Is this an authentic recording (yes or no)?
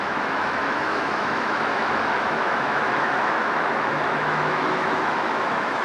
no